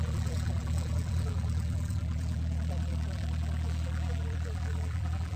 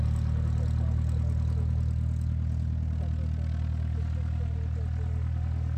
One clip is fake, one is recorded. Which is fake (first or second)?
first